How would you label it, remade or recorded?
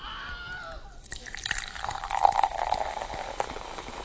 remade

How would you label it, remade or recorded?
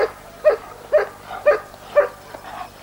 remade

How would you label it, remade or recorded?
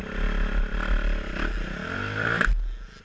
recorded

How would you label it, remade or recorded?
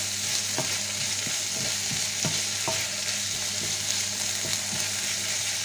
recorded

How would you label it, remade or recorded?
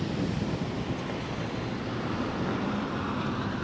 remade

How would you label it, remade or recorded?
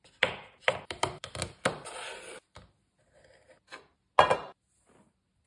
recorded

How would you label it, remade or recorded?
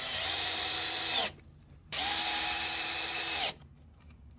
remade